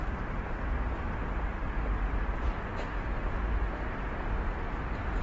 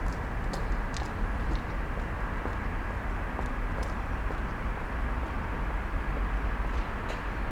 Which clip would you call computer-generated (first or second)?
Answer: first